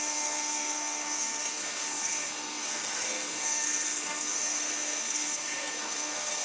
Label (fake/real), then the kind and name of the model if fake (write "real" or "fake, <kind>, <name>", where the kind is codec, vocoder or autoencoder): fake, codec, SNAC